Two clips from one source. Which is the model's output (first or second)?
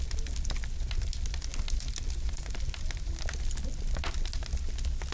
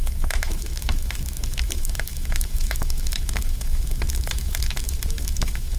second